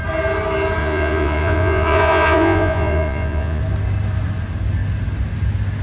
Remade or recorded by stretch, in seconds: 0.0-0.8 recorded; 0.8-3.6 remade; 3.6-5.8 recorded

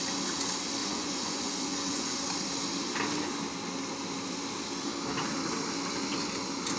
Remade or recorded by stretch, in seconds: 0.0-0.8 recorded; 0.8-2.2 remade; 2.2-6.8 recorded

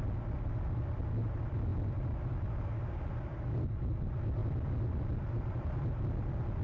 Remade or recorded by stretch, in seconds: 0.0-6.6 recorded

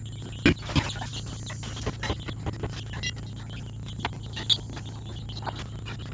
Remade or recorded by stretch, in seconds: 0.0-6.1 recorded

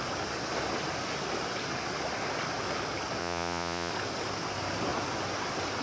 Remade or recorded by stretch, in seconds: 0.0-3.2 recorded; 3.2-3.9 remade; 3.9-5.8 recorded